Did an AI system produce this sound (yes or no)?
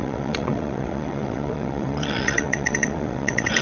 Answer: yes